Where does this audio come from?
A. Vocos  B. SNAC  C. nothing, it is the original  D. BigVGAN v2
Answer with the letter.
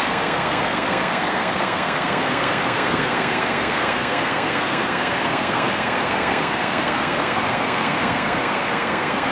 B